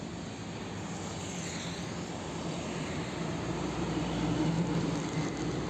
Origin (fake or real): real